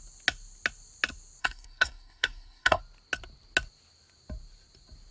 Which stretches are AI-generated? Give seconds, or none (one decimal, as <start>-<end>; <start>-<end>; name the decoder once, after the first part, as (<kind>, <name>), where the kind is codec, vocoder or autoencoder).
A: 1.4-2.8 (codec, SNAC)